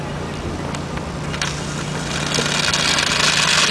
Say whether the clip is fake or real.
real